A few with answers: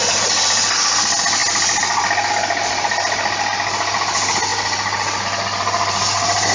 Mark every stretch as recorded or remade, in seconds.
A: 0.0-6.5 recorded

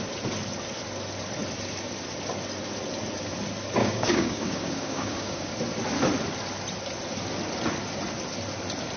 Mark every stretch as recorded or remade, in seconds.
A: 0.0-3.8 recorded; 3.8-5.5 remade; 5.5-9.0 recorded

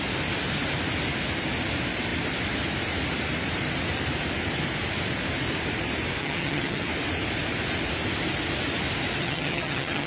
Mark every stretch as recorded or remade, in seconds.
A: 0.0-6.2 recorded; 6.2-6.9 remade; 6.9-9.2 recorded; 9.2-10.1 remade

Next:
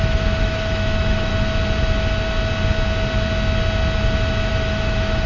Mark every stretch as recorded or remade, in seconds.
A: 0.0-1.3 remade; 1.3-4.5 recorded; 4.5-5.3 remade

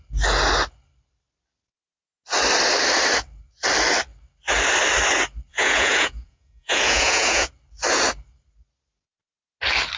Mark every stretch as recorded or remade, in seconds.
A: 0.0-5.5 recorded; 5.5-7.5 remade; 7.5-10.0 recorded

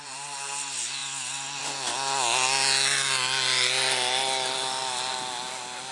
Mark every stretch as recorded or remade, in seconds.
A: 0.0-5.9 recorded

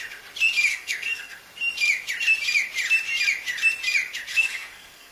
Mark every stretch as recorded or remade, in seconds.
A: 0.0-0.7 recorded; 0.7-1.4 remade; 1.4-4.3 recorded; 4.3-5.1 remade

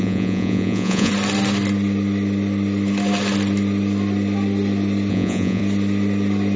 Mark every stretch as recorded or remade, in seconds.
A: 0.0-1.1 remade; 1.1-5.1 recorded; 5.1-5.6 remade; 5.6-6.6 recorded